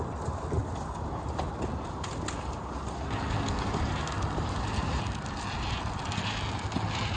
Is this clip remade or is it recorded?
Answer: recorded